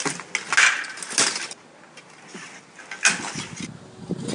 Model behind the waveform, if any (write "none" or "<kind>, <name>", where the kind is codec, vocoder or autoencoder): none